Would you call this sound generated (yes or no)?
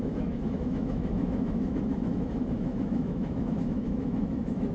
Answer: yes